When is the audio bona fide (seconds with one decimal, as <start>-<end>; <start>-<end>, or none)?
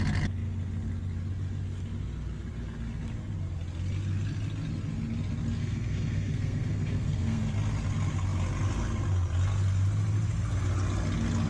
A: 0.0-5.6; 7.4-11.5